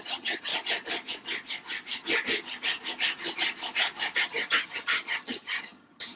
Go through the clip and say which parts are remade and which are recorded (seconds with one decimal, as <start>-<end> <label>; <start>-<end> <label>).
0.0-0.5 remade; 0.5-4.2 recorded; 4.2-6.2 remade